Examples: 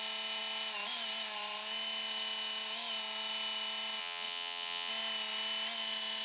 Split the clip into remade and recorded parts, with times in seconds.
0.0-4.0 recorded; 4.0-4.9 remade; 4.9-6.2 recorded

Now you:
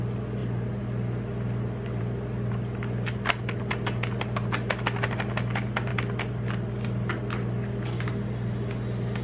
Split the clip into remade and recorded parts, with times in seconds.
0.0-9.2 recorded

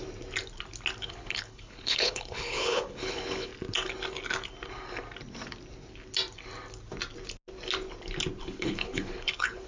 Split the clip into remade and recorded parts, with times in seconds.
0.0-1.0 recorded; 1.0-3.5 remade; 3.5-8.4 recorded; 8.4-9.7 remade

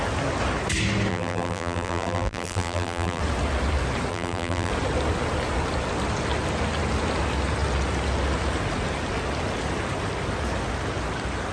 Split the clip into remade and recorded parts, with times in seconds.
0.0-1.1 recorded; 1.1-3.2 remade; 3.2-4.1 recorded; 4.1-4.7 remade; 4.7-11.5 recorded

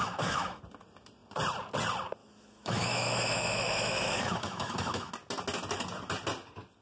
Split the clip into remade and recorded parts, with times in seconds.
0.0-0.6 remade; 0.6-2.2 recorded; 2.2-5.1 remade; 5.1-6.8 recorded